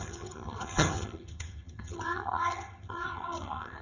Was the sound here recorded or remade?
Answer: remade